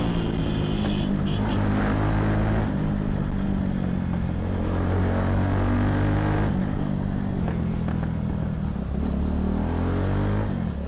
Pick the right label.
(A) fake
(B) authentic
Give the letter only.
B